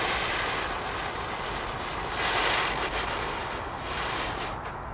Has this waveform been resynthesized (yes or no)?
no